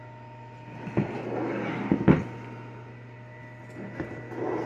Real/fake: real